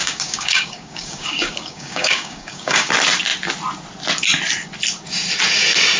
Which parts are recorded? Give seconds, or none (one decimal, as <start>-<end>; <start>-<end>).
2.9-6.0